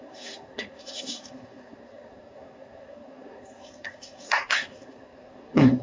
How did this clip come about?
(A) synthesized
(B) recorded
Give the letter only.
A